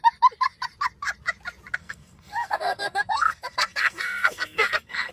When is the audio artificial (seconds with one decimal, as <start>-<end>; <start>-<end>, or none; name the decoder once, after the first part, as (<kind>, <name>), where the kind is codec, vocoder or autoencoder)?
1.8-5.1 (codec, SNAC)

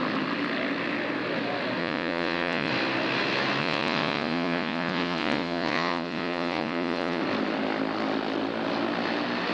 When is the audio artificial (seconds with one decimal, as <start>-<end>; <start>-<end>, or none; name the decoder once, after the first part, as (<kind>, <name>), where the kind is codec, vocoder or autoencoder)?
1.8-2.7 (vocoder, Vocos); 3.6-7.2